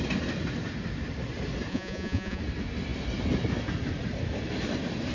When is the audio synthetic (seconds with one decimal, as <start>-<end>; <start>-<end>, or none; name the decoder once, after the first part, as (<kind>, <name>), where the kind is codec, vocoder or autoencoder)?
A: 1.7-2.4 (vocoder, Vocos)